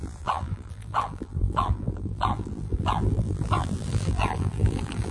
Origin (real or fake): fake